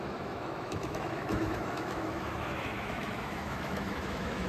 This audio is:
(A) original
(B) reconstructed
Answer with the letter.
B